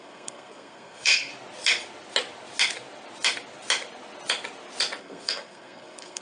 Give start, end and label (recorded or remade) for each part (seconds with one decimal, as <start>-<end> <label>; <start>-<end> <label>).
0.0-1.3 remade; 1.3-5.0 recorded; 5.0-6.2 remade